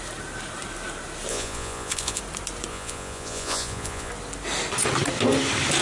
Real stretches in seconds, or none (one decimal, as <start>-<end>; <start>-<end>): 0.0-1.3; 2.2-2.7; 4.1-5.8